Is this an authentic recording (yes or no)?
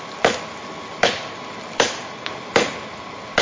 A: yes